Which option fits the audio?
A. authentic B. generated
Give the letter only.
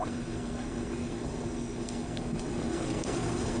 B